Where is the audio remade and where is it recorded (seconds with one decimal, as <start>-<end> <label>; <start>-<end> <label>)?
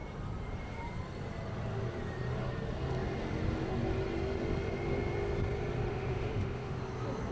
0.0-5.9 recorded; 5.9-6.8 remade; 6.8-7.3 recorded